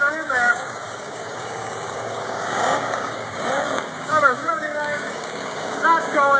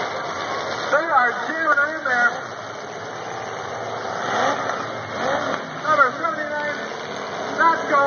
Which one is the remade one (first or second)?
first